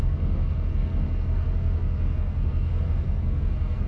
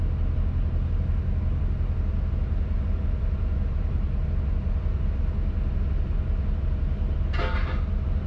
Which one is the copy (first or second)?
first